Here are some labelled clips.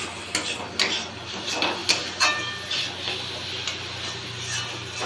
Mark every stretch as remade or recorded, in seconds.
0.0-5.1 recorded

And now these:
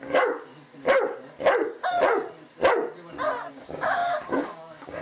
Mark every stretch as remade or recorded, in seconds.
0.0-0.5 remade; 0.5-3.5 recorded; 3.5-5.0 remade

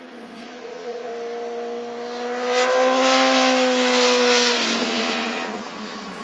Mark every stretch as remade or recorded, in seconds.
0.0-1.1 remade; 1.1-4.8 recorded; 4.8-6.2 remade

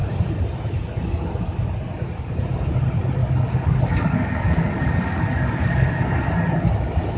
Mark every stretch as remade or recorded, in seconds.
0.0-3.2 recorded; 3.2-6.2 remade; 6.2-7.2 recorded

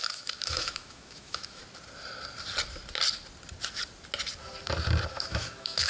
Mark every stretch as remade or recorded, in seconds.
0.0-1.6 remade; 1.6-5.1 recorded; 5.1-5.9 remade